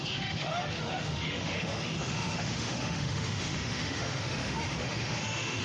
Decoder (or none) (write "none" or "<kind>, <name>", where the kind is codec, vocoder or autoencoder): autoencoder, DAC-VAE